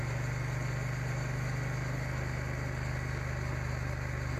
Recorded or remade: recorded